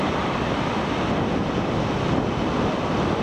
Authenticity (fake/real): real